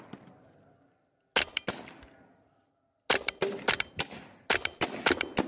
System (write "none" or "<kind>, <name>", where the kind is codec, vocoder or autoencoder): none